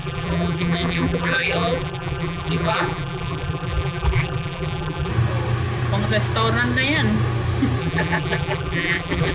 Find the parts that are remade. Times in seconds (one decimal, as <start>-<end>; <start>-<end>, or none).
0.0-5.1; 7.8-9.3